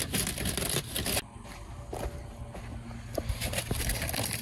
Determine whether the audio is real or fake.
real